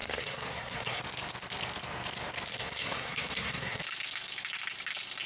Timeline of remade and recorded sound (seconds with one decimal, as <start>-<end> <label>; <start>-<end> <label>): 0.0-1.0 remade; 1.0-2.5 recorded; 2.5-3.8 remade; 3.8-5.3 recorded